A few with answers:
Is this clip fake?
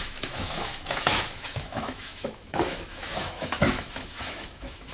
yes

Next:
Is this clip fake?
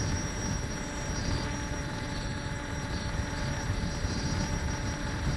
yes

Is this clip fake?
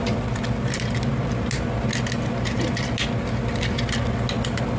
no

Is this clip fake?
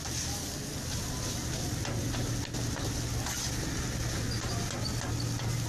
no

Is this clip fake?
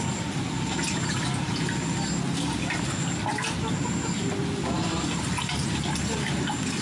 no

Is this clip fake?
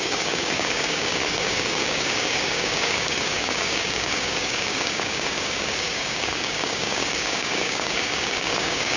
yes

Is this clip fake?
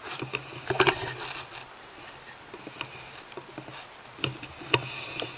no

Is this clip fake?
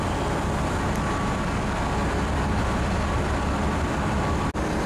no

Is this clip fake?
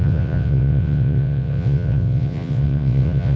yes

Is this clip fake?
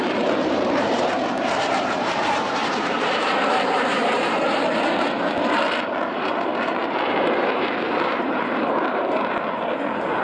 yes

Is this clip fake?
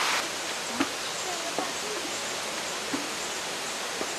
no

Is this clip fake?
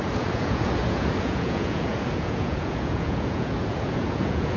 yes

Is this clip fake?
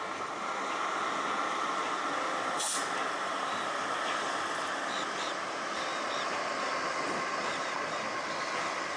no